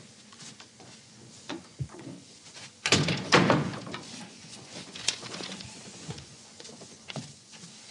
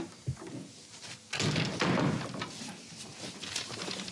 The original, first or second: second